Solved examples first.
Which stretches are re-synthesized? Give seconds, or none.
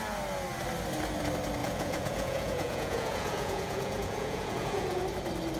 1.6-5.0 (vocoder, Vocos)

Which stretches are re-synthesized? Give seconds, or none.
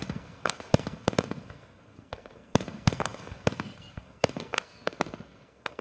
0.0-5.8 (codec, SNAC)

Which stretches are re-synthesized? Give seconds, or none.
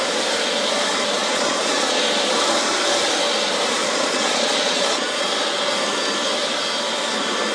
1.2-2.0 (vocoder, Vocos); 3.8-5.3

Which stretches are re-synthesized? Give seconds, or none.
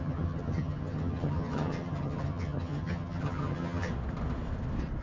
0.0-3.9 (vocoder, HiFi-GAN)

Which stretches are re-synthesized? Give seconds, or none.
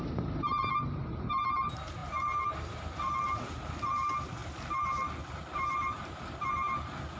none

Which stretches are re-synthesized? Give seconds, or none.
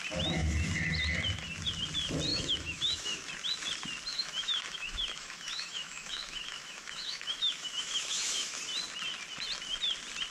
2.3-3.3 (autoencoder, DAC-VAE); 4.1-8.6